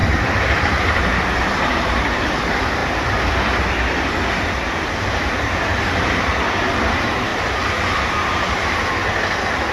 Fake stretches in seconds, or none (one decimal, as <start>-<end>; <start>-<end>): 0.0-2.4; 2.8-3.3; 5.7-6.4